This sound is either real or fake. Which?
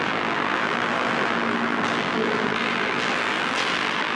fake